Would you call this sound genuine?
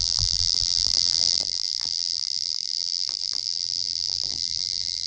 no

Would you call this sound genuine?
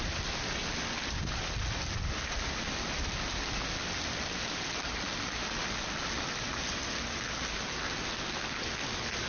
yes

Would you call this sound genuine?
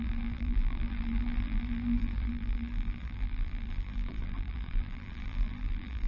no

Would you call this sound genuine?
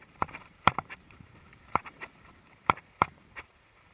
no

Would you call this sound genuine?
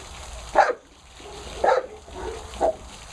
yes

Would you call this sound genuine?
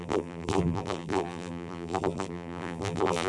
no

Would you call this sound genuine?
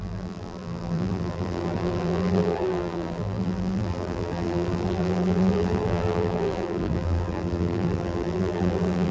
no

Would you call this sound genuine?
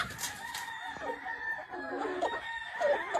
yes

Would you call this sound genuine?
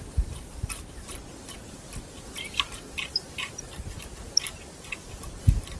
yes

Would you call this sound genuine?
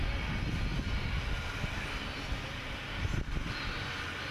yes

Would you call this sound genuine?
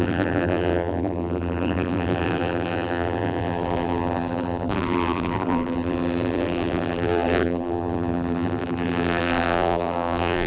no